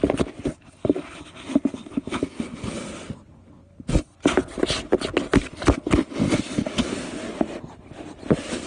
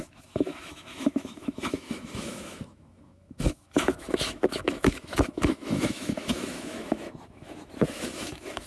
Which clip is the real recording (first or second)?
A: first